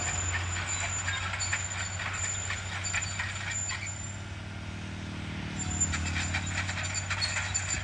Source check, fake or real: real